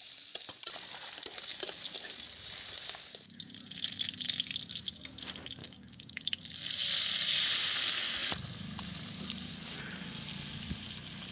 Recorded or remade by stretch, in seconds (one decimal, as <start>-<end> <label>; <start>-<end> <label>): 0.0-2.8 recorded; 2.8-3.4 remade; 3.4-5.6 recorded; 5.6-6.2 remade; 6.2-11.3 recorded